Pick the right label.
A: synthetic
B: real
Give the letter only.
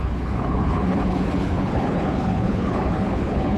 A